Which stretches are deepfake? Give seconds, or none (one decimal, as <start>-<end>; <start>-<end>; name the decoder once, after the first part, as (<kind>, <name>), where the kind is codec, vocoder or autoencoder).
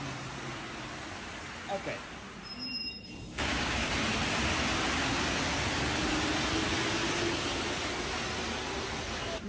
3.3-3.9 (codec, DAC)